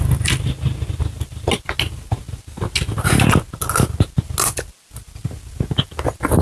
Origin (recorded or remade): recorded